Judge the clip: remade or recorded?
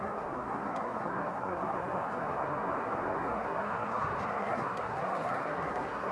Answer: remade